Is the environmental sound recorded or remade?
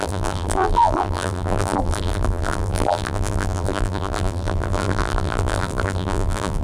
remade